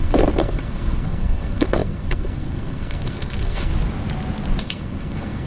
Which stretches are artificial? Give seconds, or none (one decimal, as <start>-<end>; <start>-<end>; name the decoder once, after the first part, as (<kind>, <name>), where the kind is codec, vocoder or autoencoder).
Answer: 0.0-3.7 (codec, SNAC); 4.6-5.5